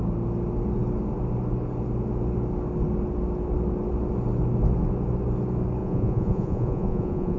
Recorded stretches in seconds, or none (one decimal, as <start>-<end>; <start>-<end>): 0.0-5.8